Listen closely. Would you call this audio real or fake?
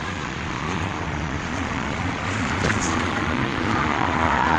fake